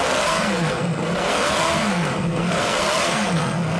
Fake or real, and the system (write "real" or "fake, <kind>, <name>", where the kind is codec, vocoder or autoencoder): fake, codec, SNAC